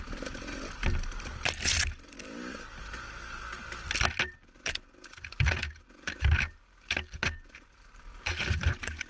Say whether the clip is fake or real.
real